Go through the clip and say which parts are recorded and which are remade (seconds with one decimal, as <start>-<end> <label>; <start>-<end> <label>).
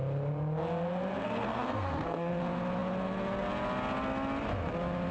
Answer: 0.0-1.2 recorded; 1.2-2.3 remade; 2.3-5.1 recorded